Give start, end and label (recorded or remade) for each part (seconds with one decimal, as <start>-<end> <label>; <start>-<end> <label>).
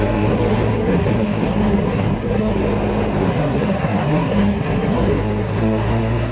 0.0-2.6 remade; 2.6-3.2 recorded; 3.2-6.3 remade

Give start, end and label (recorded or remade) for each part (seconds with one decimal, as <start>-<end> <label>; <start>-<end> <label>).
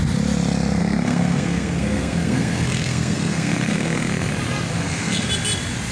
0.0-0.8 recorded; 0.8-4.3 remade; 4.3-4.7 recorded; 4.7-5.3 remade; 5.3-5.9 recorded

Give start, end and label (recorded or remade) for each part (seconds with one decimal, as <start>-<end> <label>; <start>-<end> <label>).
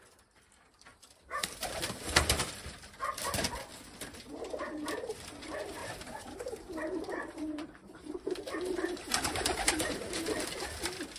0.0-0.9 recorded; 0.9-1.7 remade; 1.7-5.8 recorded; 5.8-10.3 remade; 10.3-11.2 recorded